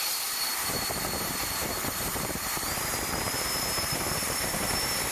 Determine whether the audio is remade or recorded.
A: remade